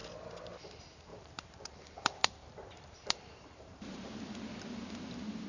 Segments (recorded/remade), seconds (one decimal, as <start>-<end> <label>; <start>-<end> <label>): 0.0-1.1 recorded; 1.1-4.3 remade; 4.3-5.5 recorded